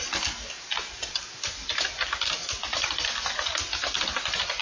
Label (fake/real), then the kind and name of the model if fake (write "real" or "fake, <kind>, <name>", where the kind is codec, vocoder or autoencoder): fake, vocoder, BigVGAN v2